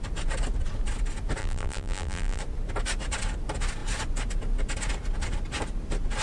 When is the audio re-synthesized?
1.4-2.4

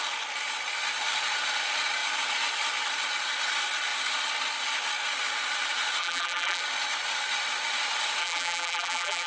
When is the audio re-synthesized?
6.0-6.6; 8.2-9.3

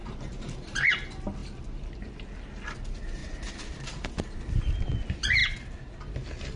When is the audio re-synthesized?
0.0-0.9; 3.2-4.1

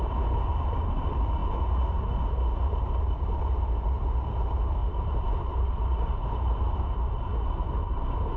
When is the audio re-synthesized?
4.8-7.7

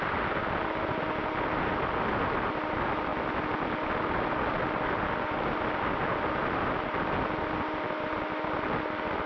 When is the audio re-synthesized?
none